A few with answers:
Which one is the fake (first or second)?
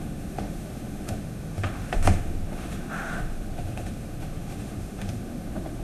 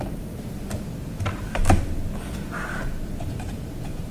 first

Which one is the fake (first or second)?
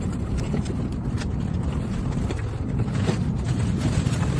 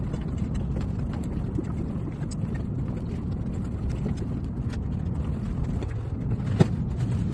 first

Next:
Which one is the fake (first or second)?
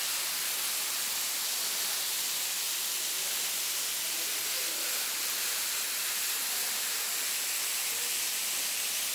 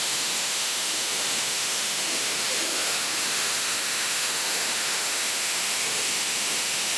second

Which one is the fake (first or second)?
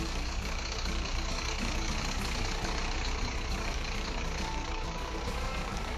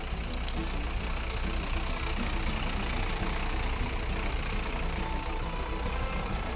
first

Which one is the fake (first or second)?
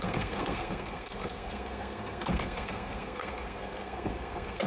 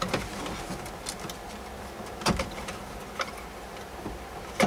first